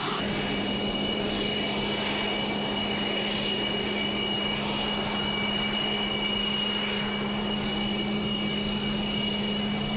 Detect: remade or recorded recorded